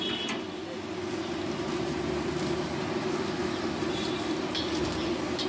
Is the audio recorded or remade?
recorded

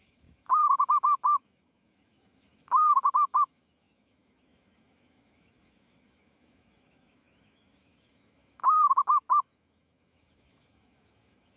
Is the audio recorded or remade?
remade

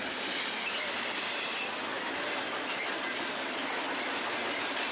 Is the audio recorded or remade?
recorded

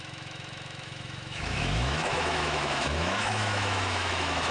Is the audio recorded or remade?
remade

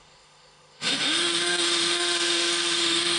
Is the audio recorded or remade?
remade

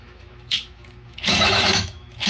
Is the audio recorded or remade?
remade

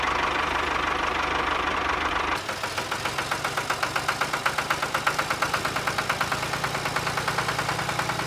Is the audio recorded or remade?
recorded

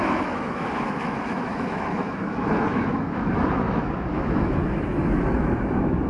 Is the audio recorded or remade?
remade